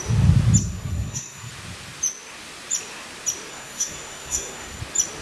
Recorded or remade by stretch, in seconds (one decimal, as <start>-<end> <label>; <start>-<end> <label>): 0.0-0.6 recorded; 0.6-1.5 remade; 1.5-3.5 recorded; 3.5-4.8 remade; 4.8-5.2 recorded